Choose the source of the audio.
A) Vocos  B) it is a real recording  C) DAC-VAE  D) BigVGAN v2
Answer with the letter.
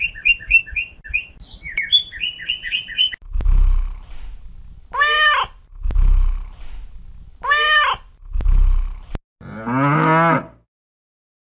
B